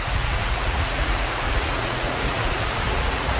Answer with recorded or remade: remade